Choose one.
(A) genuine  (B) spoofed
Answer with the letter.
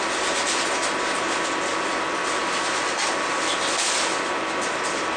A